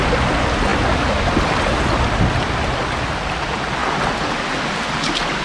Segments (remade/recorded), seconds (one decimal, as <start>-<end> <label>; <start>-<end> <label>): 0.0-5.4 recorded